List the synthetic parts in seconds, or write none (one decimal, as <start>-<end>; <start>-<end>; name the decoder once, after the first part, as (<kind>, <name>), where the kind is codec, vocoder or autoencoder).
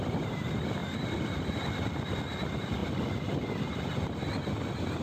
none